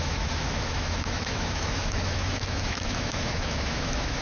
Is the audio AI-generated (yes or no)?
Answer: yes